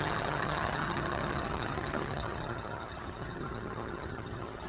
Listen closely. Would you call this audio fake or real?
fake